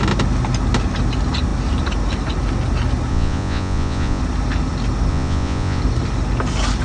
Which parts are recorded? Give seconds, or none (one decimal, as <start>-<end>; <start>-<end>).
0.0-3.1; 4.2-5.1; 5.8-6.8